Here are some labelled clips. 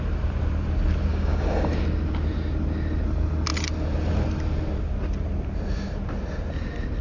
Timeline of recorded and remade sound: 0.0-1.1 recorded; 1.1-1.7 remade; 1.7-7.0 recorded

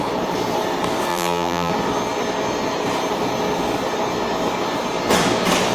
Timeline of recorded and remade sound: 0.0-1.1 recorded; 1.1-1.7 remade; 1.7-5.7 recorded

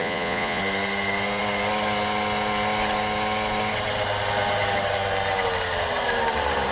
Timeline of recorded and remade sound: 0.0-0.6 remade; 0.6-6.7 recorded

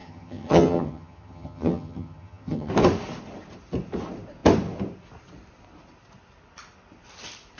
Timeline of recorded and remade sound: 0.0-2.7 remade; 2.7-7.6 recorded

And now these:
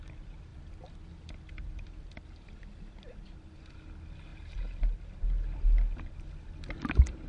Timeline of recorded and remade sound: 0.0-7.3 recorded